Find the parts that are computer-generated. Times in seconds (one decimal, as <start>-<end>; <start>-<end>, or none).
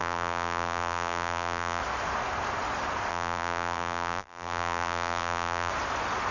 0.0-1.8; 3.1-5.7